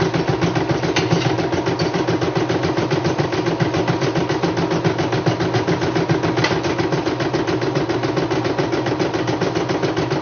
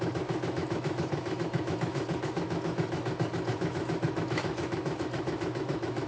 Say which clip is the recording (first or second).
first